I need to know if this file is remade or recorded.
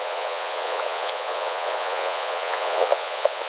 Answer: remade